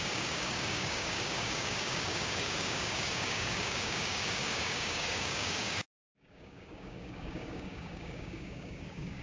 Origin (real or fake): fake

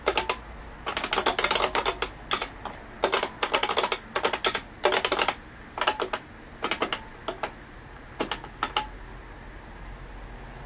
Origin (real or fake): real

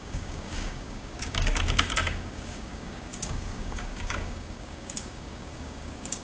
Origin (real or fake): fake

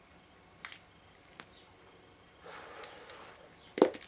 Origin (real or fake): real